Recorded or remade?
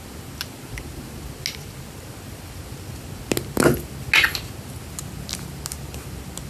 recorded